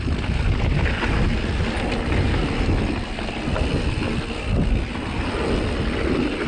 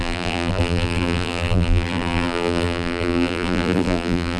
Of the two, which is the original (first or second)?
first